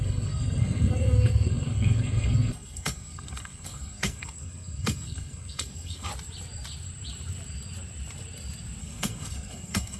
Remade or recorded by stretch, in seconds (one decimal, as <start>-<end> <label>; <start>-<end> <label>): 0.0-6.1 remade; 6.1-8.8 recorded; 8.8-10.0 remade

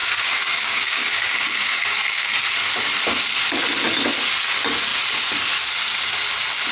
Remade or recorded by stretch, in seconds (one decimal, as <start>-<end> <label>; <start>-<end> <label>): 0.0-2.3 remade; 2.3-6.7 recorded

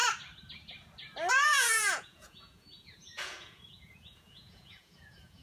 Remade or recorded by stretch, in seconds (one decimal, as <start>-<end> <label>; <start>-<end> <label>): 0.0-1.3 recorded; 1.3-5.4 remade

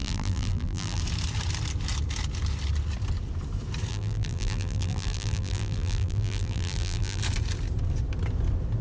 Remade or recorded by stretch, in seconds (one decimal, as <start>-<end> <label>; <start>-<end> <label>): 0.0-1.0 remade; 1.0-3.9 recorded; 3.9-7.2 remade; 7.2-8.8 recorded

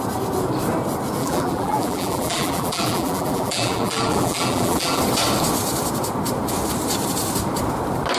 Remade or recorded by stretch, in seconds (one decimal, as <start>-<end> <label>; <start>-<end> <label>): 0.0-1.2 recorded; 1.2-5.0 remade; 5.0-8.2 recorded

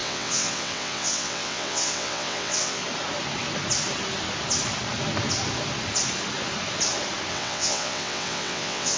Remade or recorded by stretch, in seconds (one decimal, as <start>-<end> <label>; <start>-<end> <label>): 0.0-2.8 remade; 2.8-7.3 recorded; 7.3-9.0 remade

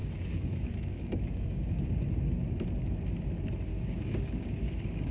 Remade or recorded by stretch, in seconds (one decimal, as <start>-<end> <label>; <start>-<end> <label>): 0.0-1.8 remade; 1.8-3.7 recorded; 3.7-5.1 remade